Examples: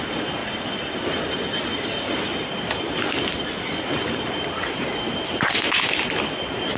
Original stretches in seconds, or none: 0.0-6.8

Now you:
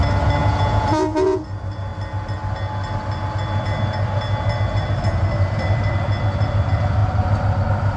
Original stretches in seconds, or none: 0.0-0.4; 1.4-8.0